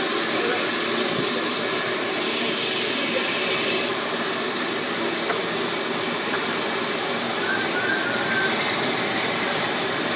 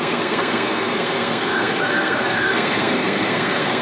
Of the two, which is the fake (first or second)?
second